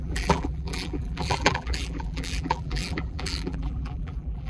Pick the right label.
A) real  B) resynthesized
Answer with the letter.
B